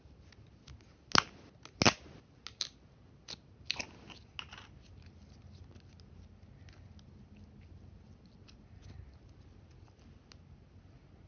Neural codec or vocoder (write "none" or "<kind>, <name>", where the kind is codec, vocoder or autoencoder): none